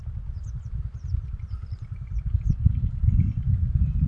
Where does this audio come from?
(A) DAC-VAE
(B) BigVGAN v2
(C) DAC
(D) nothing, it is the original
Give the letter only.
B